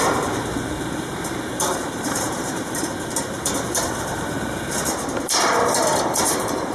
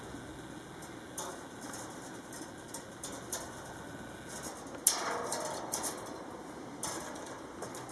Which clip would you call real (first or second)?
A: second